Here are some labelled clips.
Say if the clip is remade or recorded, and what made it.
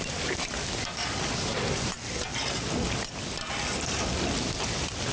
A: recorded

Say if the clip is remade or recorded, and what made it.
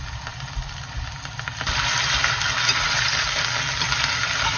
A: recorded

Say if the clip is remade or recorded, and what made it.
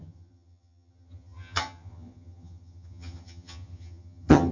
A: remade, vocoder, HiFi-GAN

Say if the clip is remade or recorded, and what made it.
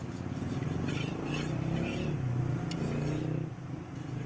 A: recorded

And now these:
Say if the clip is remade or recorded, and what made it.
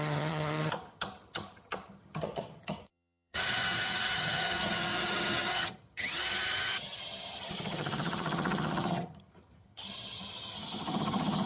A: remade, vocoder, HiFi-GAN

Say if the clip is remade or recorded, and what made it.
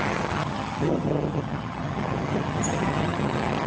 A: remade, vocoder, HiFi-GAN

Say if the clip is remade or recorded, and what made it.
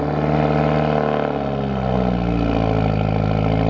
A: recorded